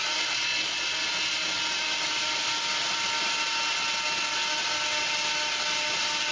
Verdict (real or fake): real